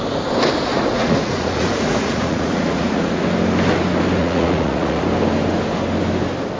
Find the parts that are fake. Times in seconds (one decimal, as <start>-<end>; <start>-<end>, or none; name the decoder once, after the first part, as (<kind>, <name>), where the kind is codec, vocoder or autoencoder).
0.7-3.2 (vocoder, Vocos); 4.2-5.0